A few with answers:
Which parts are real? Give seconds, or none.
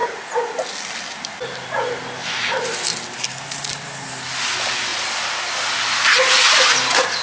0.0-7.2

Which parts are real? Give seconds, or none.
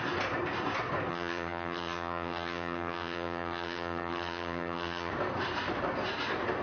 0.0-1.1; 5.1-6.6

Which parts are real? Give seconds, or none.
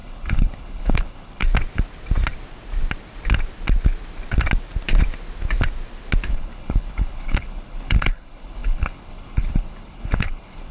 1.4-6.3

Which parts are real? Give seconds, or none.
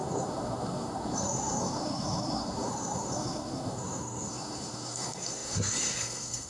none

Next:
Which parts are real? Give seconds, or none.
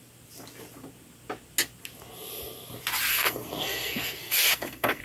0.0-3.1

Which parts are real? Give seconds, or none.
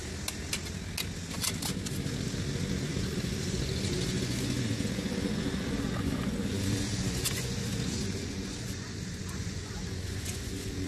0.0-2.7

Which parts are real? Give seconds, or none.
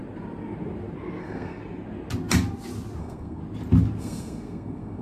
0.0-1.2; 1.6-3.0; 3.4-4.0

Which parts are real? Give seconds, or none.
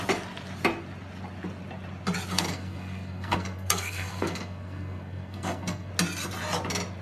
0.0-2.3; 5.9-7.0